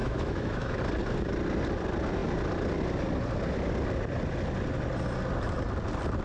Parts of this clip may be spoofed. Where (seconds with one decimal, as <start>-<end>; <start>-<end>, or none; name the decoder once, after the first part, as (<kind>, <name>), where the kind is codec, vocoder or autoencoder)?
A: 0.0-0.8 (autoencoder, DAC-VAE)